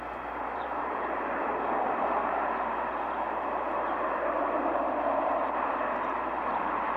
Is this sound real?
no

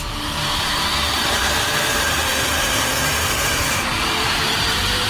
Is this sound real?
no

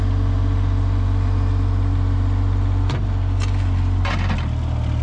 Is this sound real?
yes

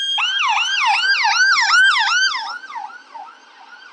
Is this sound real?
yes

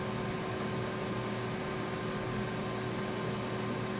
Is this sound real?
yes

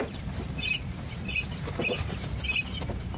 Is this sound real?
no